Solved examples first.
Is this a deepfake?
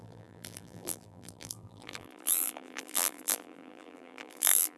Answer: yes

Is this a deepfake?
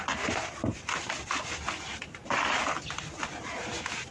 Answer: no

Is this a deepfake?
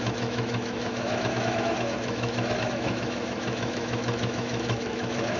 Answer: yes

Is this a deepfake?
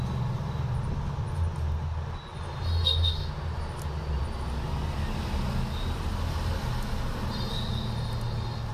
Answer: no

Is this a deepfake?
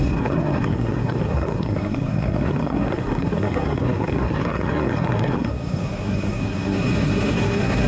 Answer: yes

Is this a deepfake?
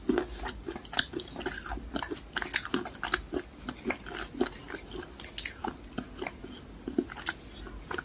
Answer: no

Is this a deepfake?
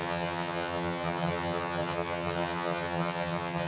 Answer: yes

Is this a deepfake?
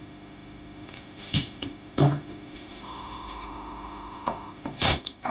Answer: yes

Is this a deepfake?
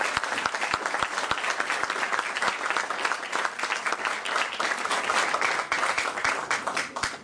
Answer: no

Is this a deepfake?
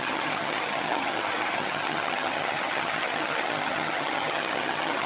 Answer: yes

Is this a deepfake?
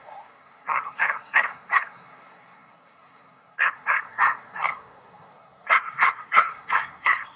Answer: yes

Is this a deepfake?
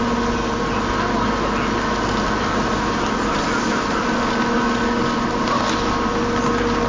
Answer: no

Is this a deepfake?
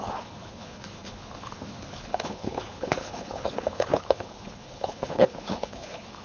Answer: yes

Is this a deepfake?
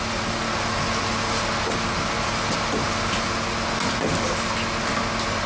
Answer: no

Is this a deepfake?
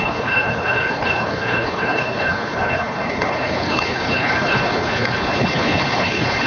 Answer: yes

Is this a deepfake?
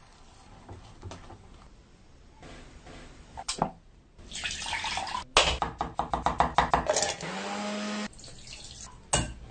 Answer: no